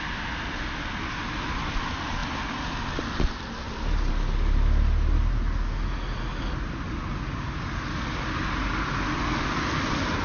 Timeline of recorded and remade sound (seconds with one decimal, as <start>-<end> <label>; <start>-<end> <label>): 0.0-10.2 recorded